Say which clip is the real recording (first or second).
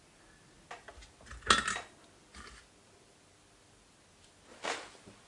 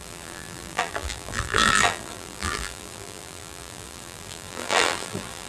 first